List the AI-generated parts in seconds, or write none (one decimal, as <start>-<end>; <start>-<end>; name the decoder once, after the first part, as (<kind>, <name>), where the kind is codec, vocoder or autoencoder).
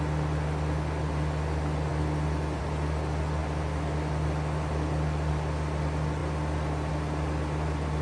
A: none